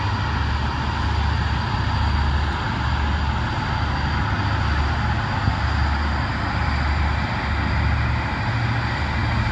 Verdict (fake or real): real